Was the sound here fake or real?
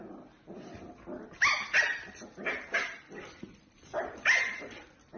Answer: real